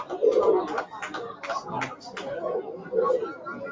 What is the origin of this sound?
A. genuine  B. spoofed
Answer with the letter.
A